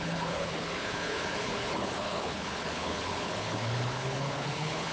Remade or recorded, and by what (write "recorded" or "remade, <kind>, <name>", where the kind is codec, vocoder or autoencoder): remade, codec, HILCodec